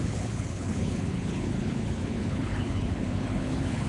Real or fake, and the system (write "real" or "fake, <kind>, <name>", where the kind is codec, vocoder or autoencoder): fake, codec, HILCodec